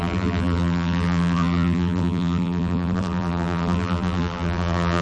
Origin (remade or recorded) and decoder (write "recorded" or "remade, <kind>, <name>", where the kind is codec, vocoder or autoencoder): remade, vocoder, BigVGAN v2